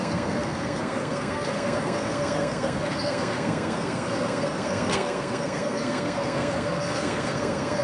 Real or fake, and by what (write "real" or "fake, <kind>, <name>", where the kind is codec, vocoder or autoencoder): fake, codec, SNAC